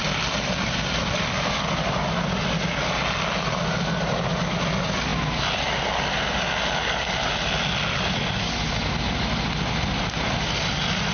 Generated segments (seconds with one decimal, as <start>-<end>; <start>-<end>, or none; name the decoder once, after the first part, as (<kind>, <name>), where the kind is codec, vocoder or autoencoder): none